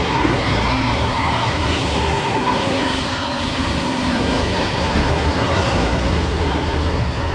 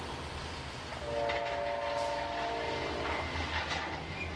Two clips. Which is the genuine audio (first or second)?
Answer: second